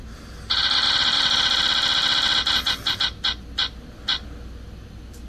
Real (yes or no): yes